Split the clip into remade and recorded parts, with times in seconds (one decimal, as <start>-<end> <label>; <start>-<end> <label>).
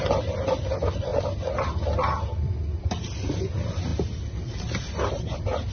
0.0-5.7 recorded